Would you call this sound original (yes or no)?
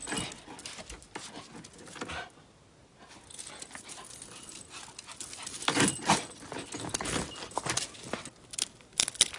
yes